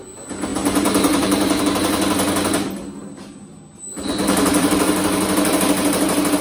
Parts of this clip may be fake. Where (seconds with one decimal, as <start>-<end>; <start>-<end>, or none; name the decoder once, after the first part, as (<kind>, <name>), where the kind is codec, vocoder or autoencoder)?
0.5-1.6 (vocoder, BigVGAN v2); 3.0-5.0